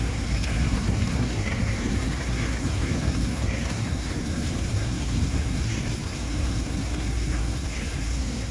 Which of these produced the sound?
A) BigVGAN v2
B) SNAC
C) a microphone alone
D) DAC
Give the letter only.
B